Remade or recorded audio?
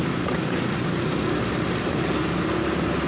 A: recorded